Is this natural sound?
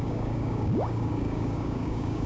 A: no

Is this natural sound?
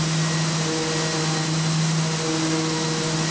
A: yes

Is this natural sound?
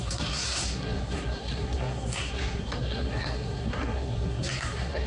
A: no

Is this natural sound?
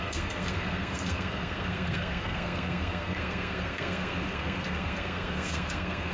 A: no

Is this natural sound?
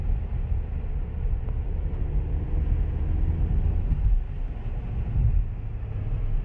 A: yes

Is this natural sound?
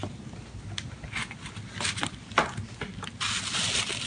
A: yes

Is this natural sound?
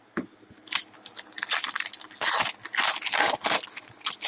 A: yes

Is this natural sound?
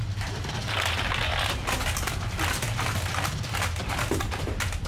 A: yes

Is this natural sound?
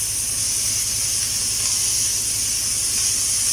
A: yes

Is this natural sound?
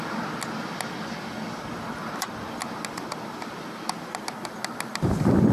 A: yes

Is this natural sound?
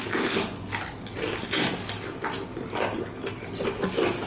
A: yes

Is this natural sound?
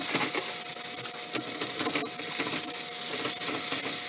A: yes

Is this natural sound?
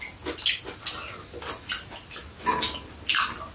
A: yes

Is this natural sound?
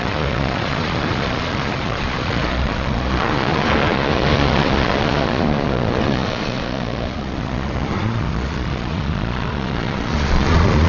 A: no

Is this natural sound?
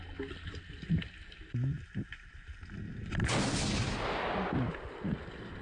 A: yes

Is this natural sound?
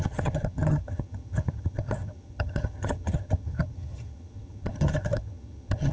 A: no